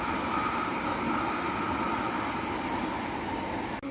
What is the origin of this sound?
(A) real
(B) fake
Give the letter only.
A